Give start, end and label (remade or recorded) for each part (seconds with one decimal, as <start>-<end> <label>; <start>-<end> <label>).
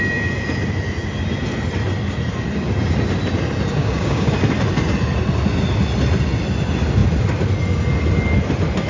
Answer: 0.0-3.8 recorded; 3.8-4.3 remade; 4.3-8.9 recorded